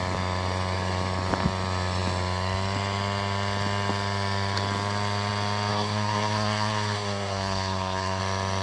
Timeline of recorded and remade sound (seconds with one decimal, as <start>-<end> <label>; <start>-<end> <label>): 0.0-5.7 recorded; 5.7-8.2 remade; 8.2-8.6 recorded